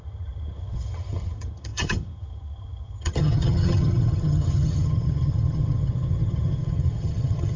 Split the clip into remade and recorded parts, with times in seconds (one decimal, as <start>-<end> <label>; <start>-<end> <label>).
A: 0.0-7.6 remade